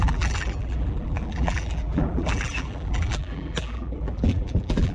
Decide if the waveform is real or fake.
fake